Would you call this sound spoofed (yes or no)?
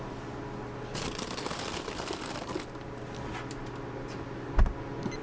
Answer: no